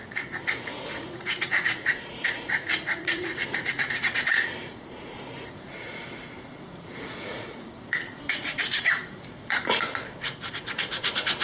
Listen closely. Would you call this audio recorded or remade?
remade